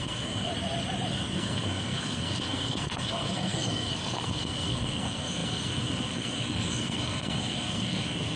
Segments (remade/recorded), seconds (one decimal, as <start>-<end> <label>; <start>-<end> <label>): 0.0-0.5 remade; 0.5-1.1 recorded; 1.1-8.4 remade